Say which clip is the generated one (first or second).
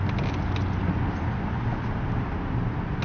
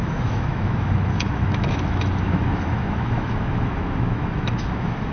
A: second